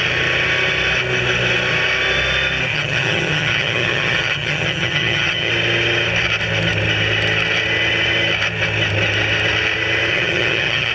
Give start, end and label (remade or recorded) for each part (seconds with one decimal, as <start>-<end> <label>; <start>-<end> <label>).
0.0-2.7 recorded; 2.7-5.5 remade; 5.5-10.1 recorded; 10.1-10.9 remade